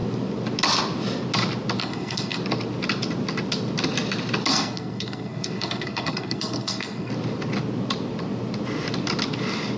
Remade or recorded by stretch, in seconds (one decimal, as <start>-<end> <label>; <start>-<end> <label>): 0.0-1.8 recorded; 1.8-2.4 remade; 2.4-4.5 recorded; 4.5-7.1 remade; 7.1-9.8 recorded